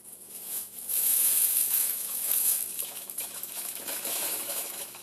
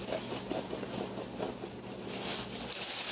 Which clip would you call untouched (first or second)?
second